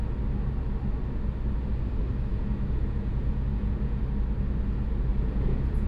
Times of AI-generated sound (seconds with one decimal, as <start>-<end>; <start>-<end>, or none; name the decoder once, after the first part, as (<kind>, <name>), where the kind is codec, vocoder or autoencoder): 2.3-4.0 (vocoder, Vocos); 5.1-5.9